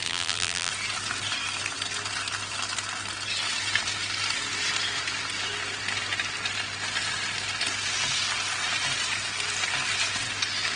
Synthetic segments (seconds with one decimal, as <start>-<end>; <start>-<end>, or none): 0.0-0.7